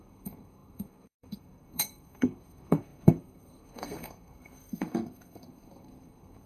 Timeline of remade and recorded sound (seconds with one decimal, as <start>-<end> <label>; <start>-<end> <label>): 0.0-6.5 remade